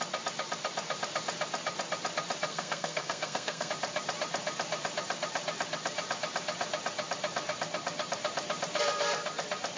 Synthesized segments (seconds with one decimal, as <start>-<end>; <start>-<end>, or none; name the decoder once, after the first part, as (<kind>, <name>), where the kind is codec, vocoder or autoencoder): 2.5-3.7 (codec, SNAC)